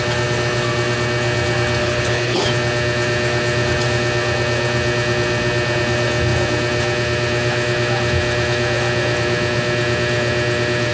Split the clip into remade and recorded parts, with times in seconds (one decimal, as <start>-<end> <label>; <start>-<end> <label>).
0.0-1.8 recorded; 1.8-2.4 remade; 2.4-10.9 recorded